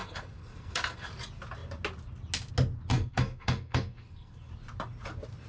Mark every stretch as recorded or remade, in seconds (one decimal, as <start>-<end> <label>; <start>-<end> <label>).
0.0-1.1 remade; 1.1-2.9 recorded; 2.9-4.5 remade; 4.5-5.5 recorded

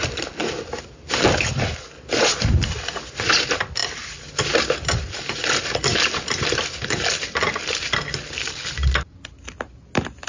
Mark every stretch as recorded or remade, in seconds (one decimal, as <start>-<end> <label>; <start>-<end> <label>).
0.0-10.3 recorded